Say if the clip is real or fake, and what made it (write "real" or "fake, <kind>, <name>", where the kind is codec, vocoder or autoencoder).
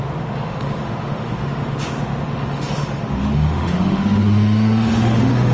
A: fake, autoencoder, DAC-VAE